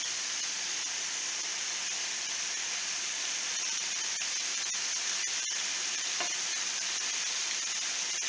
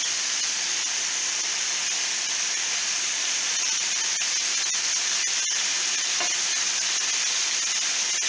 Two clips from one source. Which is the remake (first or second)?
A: first